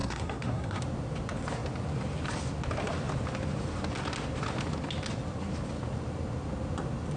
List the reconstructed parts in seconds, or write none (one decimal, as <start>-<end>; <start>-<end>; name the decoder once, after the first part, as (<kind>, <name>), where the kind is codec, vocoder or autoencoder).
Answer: 0.0-0.8 (codec, SNAC)